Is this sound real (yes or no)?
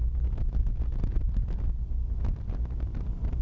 yes